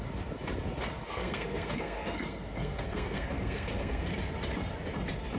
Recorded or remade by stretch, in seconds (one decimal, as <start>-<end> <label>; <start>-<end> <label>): 0.0-1.0 recorded; 1.0-4.1 remade; 4.1-5.4 recorded